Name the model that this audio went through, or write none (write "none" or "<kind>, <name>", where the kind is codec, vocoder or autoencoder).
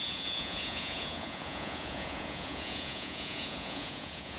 vocoder, Vocos